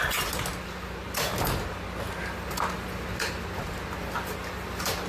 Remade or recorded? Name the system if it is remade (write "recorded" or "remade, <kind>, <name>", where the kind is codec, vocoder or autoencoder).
recorded